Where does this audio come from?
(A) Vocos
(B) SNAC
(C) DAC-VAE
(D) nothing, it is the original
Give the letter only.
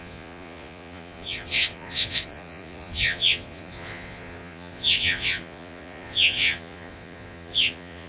A